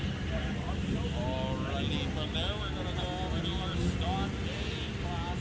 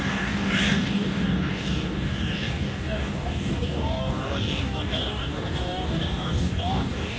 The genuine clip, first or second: first